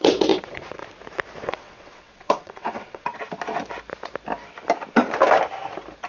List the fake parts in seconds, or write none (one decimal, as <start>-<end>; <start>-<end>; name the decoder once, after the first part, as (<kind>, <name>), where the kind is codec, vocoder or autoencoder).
0.0-0.8 (vocoder, WaveNeXt); 1.4-3.1